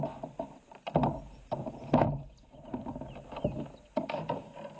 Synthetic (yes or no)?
no